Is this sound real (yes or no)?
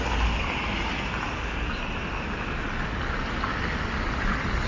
yes